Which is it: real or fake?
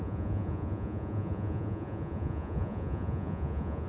fake